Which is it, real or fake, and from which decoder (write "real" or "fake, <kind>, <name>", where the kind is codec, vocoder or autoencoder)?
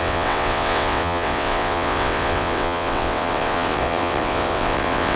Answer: fake, vocoder, WaveNeXt